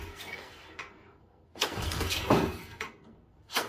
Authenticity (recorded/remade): remade